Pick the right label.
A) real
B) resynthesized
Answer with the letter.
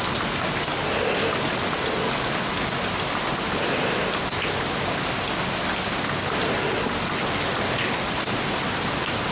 A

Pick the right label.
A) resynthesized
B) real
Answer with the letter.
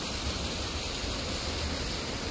B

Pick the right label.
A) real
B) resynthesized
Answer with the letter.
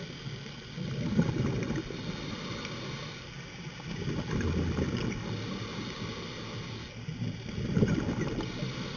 A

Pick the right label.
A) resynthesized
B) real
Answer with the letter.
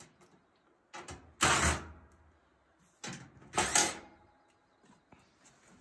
B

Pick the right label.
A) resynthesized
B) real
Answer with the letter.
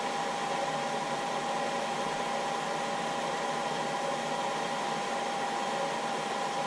B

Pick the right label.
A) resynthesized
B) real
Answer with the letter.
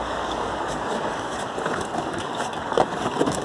A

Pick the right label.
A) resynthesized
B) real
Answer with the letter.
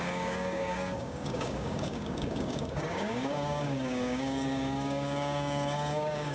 A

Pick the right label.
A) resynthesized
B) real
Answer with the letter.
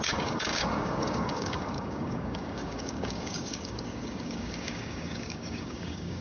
A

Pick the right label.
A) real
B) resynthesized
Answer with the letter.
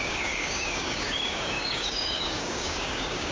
B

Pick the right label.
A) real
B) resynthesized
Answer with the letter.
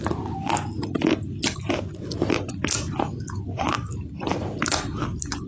A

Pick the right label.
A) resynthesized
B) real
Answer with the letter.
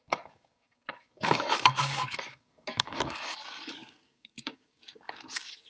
A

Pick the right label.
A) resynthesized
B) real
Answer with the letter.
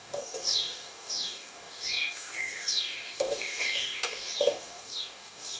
A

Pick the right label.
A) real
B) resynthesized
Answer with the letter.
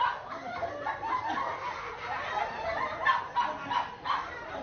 A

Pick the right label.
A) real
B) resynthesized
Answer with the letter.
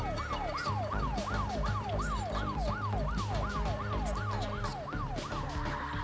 A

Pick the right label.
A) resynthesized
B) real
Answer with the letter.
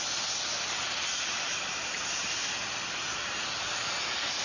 B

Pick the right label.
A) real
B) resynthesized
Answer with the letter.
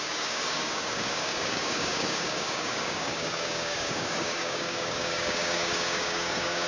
B